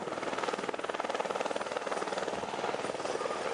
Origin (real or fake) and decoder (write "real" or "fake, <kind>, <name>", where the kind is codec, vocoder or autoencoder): real